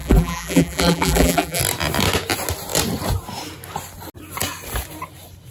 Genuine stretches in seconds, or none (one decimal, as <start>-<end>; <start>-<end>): 1.6-5.5